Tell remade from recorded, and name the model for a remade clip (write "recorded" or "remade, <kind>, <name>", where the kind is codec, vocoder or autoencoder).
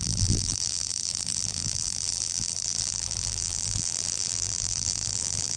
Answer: remade, vocoder, BigVGAN v2